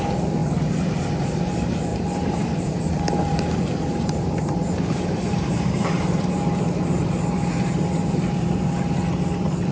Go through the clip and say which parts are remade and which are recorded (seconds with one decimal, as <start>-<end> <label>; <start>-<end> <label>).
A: 0.0-1.9 recorded; 1.9-2.8 remade; 2.8-3.3 recorded; 3.3-8.6 remade; 8.6-9.7 recorded

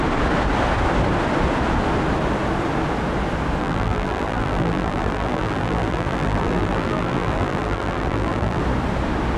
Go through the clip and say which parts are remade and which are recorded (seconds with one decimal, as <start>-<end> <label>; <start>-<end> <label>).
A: 0.0-3.6 recorded; 3.6-8.6 remade; 8.6-9.4 recorded

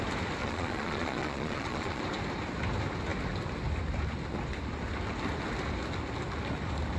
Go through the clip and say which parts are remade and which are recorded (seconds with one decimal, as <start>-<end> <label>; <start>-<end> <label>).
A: 0.0-0.4 recorded; 0.4-2.0 remade; 2.0-7.0 recorded

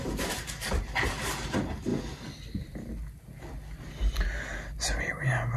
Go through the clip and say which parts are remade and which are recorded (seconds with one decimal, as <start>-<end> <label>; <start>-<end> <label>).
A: 0.0-1.9 remade; 1.9-5.0 recorded; 5.0-5.6 remade

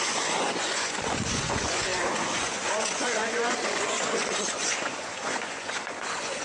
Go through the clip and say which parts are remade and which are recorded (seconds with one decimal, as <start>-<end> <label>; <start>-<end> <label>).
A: 0.0-6.4 remade

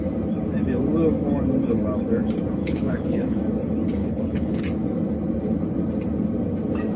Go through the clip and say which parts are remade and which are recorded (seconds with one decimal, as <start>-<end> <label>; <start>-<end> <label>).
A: 0.0-2.6 recorded; 2.6-3.4 remade; 3.4-4.0 recorded; 4.0-4.6 remade; 4.6-7.0 recorded

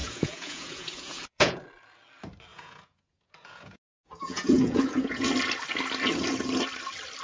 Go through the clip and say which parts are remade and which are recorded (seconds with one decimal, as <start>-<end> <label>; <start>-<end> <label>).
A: 0.0-1.6 remade; 1.6-2.5 recorded; 2.5-5.3 remade; 5.3-7.2 recorded